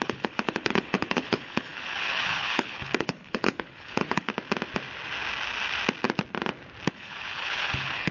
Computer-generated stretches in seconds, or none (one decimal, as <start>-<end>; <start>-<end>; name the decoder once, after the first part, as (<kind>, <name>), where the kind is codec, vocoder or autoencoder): 0.0-4.3 (codec, HILCodec); 6.9-8.1